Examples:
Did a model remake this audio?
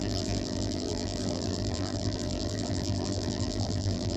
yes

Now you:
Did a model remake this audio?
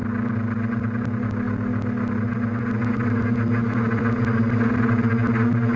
no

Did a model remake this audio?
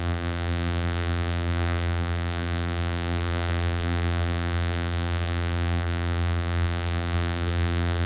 yes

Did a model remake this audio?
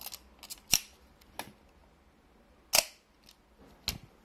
no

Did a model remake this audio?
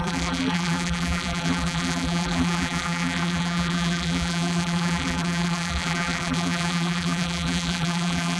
yes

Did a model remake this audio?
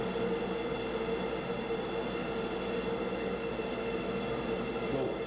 no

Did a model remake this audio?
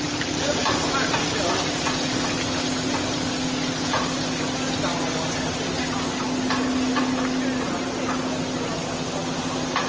no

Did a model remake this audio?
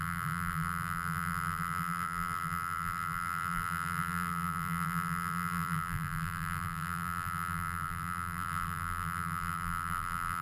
yes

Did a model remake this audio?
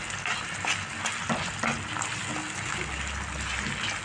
no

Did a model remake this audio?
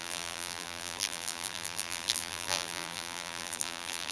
yes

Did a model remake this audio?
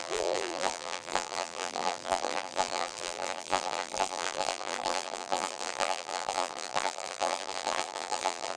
yes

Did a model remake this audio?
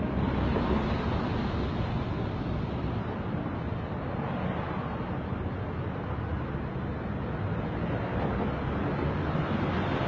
no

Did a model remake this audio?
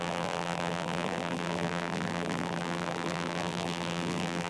yes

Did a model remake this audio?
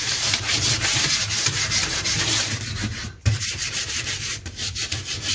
yes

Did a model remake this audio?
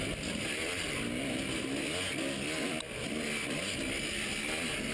no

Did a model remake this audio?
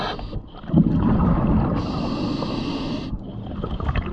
no